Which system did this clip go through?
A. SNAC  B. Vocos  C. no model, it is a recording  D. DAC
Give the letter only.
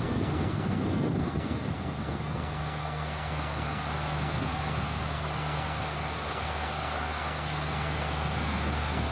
A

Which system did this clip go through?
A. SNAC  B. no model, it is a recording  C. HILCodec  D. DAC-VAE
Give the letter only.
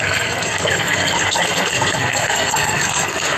A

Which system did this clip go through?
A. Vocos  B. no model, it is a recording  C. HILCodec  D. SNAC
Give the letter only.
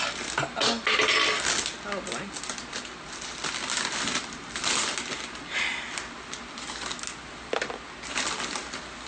B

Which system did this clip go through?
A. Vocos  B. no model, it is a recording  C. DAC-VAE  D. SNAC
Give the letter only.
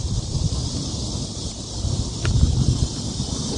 B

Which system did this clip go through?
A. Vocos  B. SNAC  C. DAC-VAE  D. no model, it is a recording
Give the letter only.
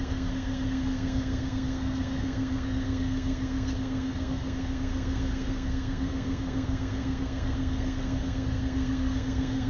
B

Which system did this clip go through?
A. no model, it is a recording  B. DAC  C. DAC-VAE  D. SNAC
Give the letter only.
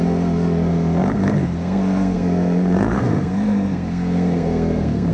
D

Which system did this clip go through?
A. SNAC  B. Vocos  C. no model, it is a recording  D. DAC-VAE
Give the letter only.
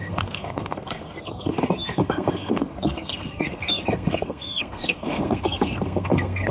A